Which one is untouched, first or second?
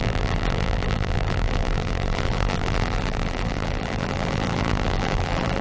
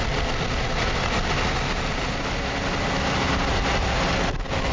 second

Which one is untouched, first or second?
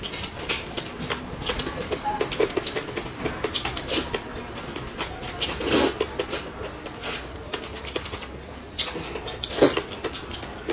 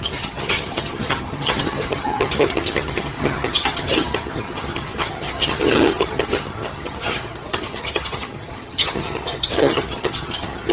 first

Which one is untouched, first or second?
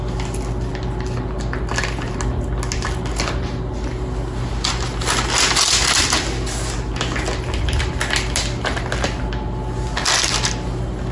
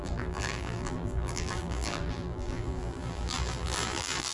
first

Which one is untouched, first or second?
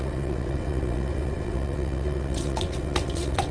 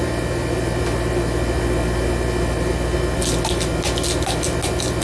second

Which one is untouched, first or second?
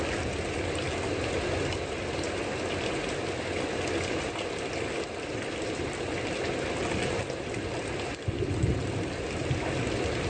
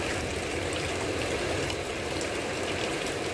first